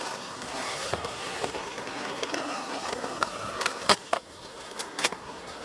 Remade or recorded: remade